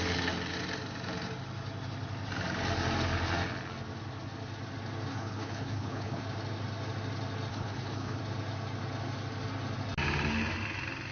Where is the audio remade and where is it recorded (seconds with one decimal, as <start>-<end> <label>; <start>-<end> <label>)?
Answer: 0.0-5.1 recorded; 5.1-6.2 remade; 6.2-7.5 recorded; 7.5-8.2 remade; 8.2-11.1 recorded